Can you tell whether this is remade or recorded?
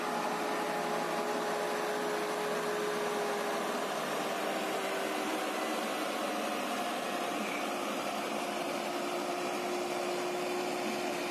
recorded